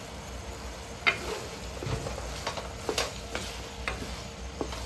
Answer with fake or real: real